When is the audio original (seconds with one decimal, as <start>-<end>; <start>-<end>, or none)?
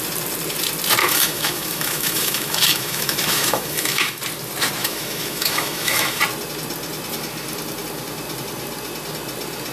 0.0-1.0; 4.2-4.8; 6.2-9.7